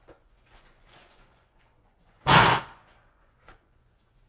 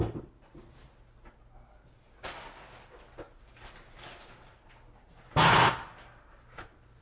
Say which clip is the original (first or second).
second